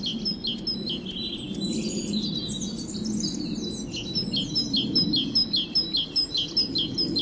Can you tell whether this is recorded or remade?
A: recorded